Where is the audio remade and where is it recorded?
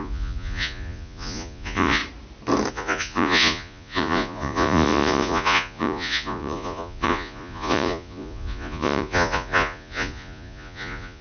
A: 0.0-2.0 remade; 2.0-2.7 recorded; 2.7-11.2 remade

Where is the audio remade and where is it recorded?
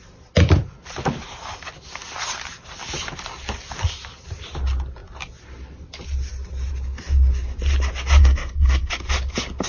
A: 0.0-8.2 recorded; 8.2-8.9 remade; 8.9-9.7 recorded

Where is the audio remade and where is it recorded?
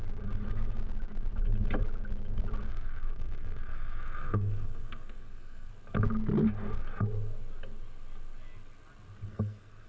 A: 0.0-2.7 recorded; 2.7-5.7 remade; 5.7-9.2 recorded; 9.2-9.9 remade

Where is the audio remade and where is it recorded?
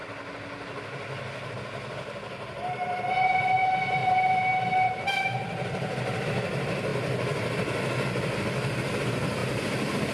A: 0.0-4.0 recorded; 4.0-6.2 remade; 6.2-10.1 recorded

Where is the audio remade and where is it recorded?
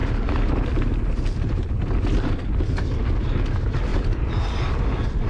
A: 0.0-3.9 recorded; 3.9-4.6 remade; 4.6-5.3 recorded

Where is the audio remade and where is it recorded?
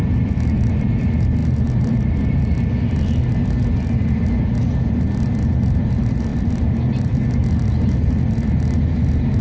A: 0.0-9.4 recorded